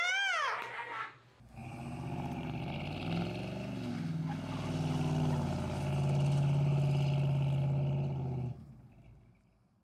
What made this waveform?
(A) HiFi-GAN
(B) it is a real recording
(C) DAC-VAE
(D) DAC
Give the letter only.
B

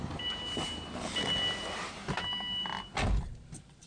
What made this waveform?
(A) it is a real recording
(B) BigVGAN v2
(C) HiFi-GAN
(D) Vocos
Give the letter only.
A